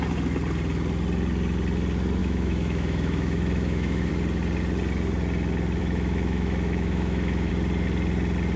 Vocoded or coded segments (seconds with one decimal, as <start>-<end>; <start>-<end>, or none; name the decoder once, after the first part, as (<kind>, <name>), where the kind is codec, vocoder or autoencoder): 2.2-4.1 (autoencoder, DAC-VAE); 5.8-7.5